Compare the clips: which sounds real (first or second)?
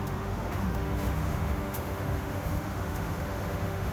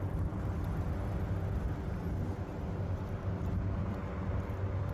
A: second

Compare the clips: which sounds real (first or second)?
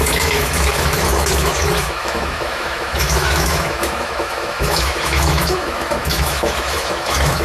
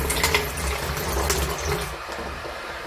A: second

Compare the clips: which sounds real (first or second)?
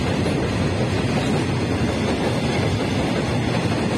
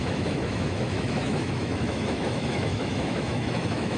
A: first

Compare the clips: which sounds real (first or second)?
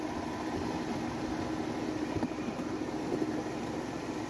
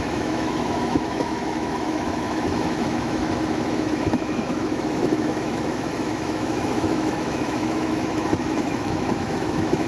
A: first